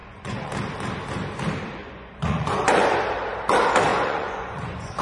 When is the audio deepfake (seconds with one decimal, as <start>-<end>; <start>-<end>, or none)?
0.0-0.5; 1.8-3.0; 3.9-5.0